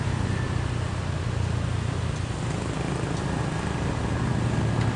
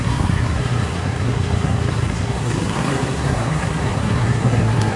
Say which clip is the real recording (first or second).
first